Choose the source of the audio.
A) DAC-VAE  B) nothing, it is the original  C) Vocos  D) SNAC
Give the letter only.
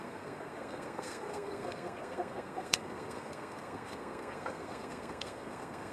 D